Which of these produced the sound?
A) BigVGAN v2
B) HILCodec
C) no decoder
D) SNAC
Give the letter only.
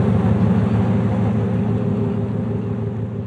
C